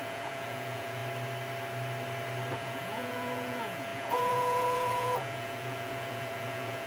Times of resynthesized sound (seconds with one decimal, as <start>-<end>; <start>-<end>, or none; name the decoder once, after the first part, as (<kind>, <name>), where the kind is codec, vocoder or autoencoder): 0.0-1.0 (vocoder, Vocos); 2.5-6.9